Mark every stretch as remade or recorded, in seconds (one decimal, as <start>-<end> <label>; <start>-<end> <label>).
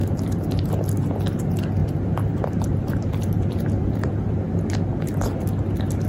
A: 0.0-0.7 remade; 0.7-1.8 recorded; 1.8-4.7 remade; 4.7-6.1 recorded